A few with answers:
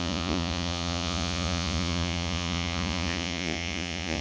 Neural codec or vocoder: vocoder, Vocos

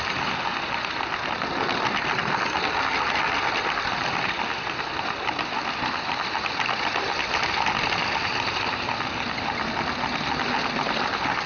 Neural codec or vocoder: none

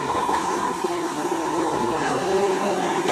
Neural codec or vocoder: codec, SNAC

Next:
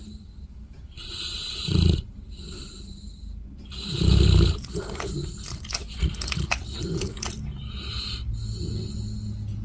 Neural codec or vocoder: none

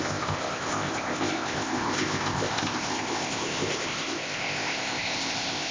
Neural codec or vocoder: codec, ZipCodec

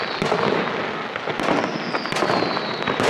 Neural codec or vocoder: none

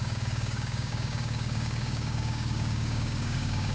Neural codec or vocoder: codec, DAC